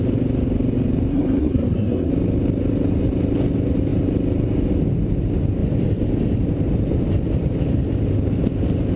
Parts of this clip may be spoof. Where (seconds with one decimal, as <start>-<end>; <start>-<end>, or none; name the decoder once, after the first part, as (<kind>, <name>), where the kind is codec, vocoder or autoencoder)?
1.1-2.1 (codec, SNAC)